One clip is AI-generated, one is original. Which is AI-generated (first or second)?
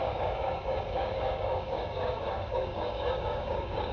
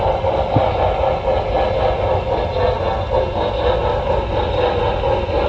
first